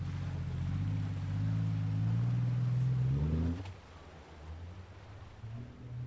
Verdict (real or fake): real